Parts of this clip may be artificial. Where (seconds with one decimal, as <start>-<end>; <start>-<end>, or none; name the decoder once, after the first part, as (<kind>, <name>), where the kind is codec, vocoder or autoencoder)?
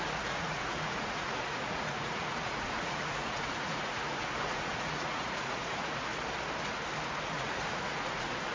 0.0-6.1 (vocoder, Vocos); 7.2-8.5